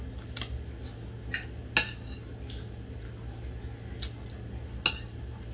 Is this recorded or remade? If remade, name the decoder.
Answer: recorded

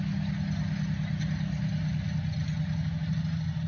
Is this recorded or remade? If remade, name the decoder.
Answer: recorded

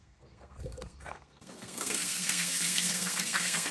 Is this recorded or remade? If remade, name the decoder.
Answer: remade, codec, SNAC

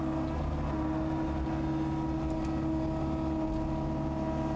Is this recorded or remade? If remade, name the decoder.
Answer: recorded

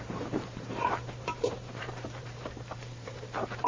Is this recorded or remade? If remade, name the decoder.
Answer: remade, vocoder, BigVGAN v2